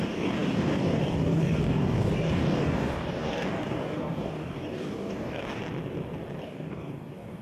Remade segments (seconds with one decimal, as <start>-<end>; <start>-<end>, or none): 0.0-5.6; 6.4-7.4